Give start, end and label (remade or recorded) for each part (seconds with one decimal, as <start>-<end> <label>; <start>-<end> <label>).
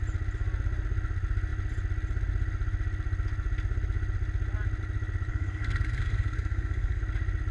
0.0-5.3 recorded; 5.3-7.0 remade; 7.0-7.5 recorded